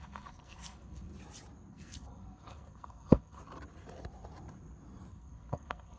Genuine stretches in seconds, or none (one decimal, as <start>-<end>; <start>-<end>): 1.1-1.7; 3.4-5.1